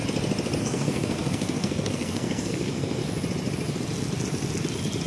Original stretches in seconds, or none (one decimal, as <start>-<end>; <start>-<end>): 0.0-0.6; 3.0-5.1